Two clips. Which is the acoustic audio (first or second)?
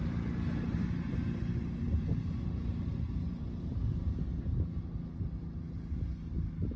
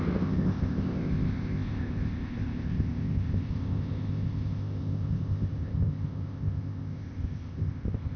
first